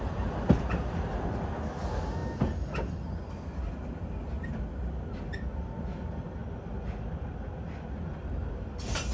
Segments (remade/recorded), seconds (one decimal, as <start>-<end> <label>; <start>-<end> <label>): 0.0-9.1 recorded